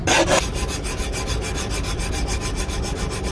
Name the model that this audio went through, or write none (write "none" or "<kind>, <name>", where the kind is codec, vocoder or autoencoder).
none